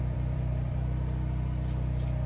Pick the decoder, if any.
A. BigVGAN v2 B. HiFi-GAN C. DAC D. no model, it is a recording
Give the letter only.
A